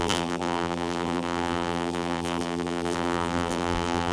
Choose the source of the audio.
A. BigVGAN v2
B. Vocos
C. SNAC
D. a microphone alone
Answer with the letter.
A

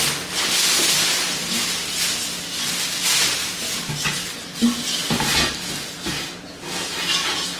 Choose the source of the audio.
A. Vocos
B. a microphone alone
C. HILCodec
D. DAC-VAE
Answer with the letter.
B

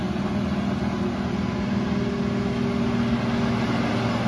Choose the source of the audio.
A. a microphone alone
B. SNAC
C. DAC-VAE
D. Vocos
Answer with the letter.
A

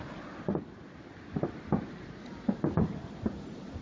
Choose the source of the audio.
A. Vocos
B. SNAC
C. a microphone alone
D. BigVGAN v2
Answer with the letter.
C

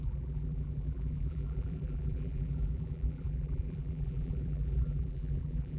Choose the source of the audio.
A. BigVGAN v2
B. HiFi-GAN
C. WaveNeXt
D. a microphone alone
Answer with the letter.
A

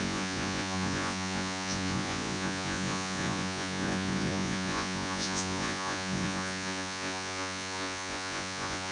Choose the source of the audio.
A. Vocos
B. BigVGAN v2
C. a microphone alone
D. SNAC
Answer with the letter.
A